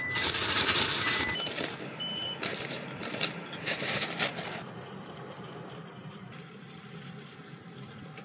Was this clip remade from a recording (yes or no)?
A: yes